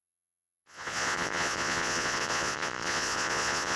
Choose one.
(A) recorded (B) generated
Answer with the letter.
B